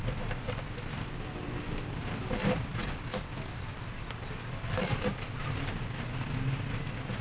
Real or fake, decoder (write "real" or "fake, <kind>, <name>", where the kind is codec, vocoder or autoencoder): real